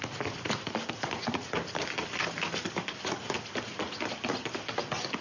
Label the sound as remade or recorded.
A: recorded